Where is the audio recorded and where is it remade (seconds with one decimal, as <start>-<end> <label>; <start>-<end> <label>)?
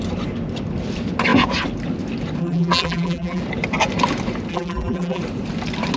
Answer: 0.0-2.4 recorded; 2.4-3.4 remade; 3.4-4.5 recorded; 4.5-5.2 remade; 5.2-6.0 recorded